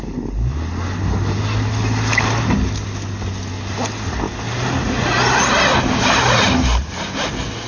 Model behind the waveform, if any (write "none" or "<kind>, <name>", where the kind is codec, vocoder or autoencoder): none